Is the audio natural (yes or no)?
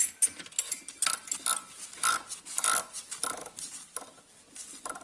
yes